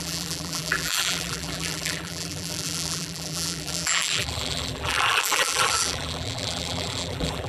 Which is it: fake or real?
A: fake